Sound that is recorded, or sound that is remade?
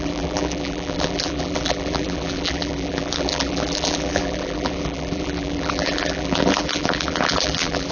remade